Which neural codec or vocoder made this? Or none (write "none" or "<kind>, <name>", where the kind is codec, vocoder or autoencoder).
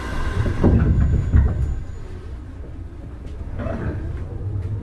none